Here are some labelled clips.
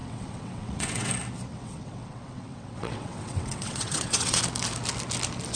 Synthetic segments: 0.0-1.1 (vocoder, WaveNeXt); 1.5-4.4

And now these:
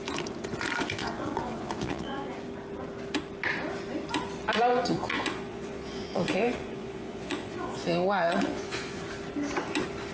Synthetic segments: 1.0-2.3 (vocoder, Vocos); 4.7-9.0

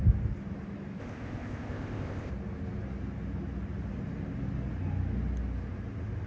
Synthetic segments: 1.0-2.3 (codec, ZipCodec)

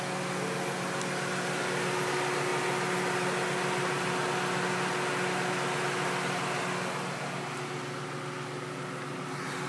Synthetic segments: none

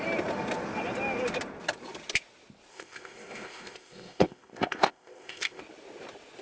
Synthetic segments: 2.7-5.6 (codec, ZipCodec)

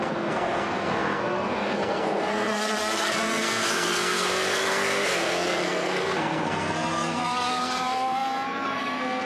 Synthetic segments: 0.0-9.3 (codec, SNAC)

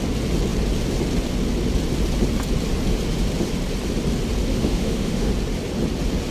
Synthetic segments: 4.5-5.3 (autoencoder, DAC-VAE)